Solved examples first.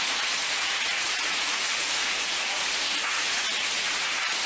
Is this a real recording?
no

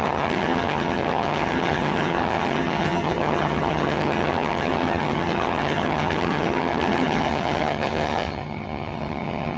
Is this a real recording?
no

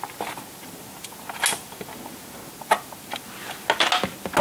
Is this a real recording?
yes